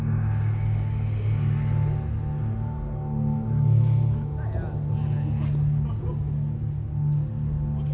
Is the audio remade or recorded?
recorded